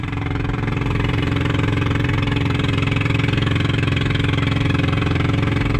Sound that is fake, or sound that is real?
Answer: fake